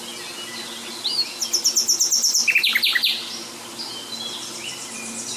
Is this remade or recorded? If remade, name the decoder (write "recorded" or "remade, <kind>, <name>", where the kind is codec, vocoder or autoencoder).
recorded